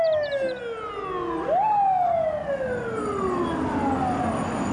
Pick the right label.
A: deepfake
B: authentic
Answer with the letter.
B